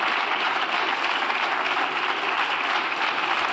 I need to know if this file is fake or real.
real